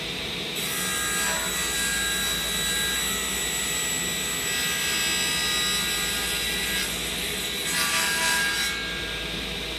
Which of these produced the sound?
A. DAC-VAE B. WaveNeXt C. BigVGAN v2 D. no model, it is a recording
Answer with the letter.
D